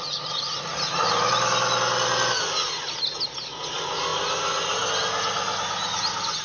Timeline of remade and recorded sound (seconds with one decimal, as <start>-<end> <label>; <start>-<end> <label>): 0.0-6.4 recorded